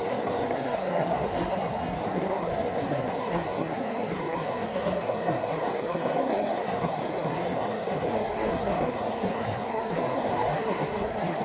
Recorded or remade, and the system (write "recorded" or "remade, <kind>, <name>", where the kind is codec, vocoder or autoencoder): remade, codec, SNAC